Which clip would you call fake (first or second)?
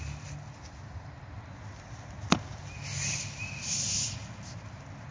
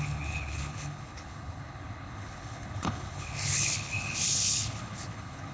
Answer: second